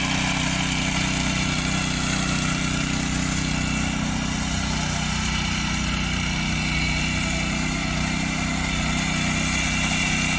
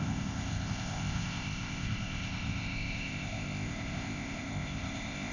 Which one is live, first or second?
first